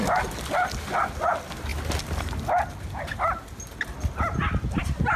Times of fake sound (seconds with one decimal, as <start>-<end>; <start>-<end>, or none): none